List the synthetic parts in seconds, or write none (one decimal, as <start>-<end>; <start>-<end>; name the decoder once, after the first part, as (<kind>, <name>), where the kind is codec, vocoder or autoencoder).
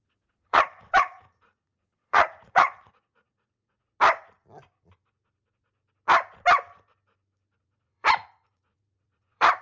0.0-3.8 (vocoder, Vocos); 7.5-9.6